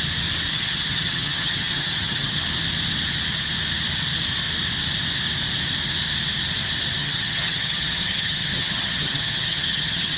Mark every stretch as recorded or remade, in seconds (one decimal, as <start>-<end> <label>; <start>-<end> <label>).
0.0-0.5 recorded; 0.5-2.4 remade; 2.4-7.0 recorded; 7.0-10.2 remade